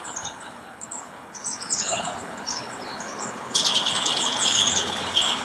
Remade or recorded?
remade